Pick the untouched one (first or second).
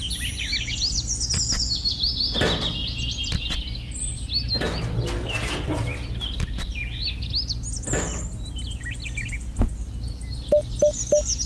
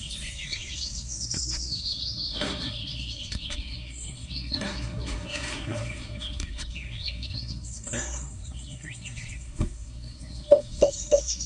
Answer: first